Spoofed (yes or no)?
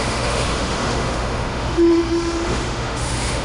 yes